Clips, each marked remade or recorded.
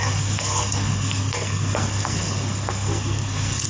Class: remade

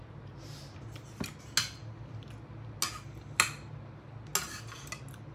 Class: recorded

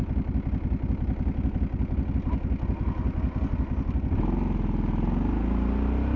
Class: recorded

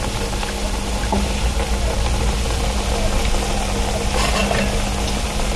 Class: recorded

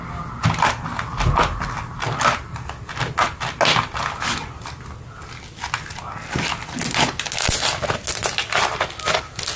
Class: recorded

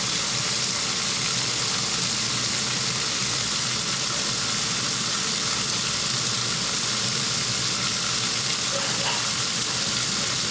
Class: recorded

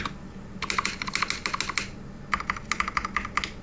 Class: recorded